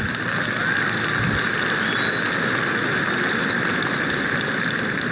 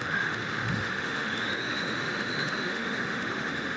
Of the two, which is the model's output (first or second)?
second